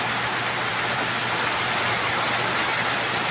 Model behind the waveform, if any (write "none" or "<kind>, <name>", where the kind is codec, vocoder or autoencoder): none